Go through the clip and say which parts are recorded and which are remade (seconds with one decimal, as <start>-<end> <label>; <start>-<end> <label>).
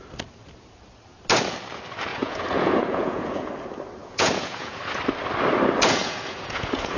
0.0-2.1 recorded; 2.1-3.5 remade; 3.5-4.0 recorded; 4.0-4.8 remade; 4.8-6.0 recorded; 6.0-7.0 remade